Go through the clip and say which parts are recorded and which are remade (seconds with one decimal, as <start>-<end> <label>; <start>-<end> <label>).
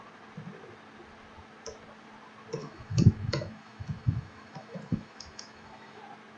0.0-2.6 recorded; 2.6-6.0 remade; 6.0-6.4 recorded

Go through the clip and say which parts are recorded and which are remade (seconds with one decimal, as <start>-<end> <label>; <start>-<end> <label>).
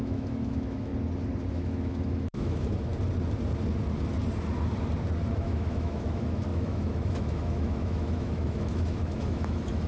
0.0-0.9 remade; 0.9-1.5 recorded; 1.5-2.9 remade; 2.9-5.3 recorded; 5.3-9.9 remade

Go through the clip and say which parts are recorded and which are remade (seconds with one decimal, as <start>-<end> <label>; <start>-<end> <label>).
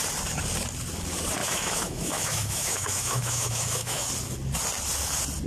0.0-1.4 recorded; 1.4-4.1 remade; 4.1-5.5 recorded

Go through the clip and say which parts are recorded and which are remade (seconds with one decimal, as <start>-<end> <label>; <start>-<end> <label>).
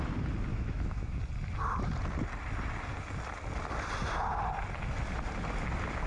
0.0-0.5 recorded; 0.5-1.2 remade; 1.2-6.1 recorded